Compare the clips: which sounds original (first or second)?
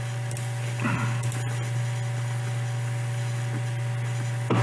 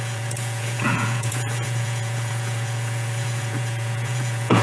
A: first